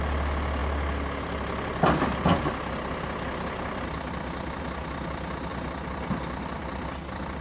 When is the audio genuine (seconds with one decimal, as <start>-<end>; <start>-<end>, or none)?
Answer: 0.0-7.4